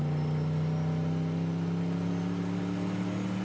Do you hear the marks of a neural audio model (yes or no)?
no